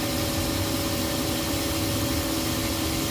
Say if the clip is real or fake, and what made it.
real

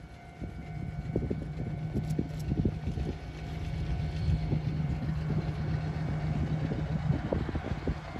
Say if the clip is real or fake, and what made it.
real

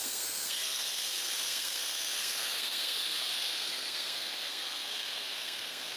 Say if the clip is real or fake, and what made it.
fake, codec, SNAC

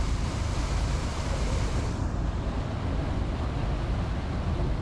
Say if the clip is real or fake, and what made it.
real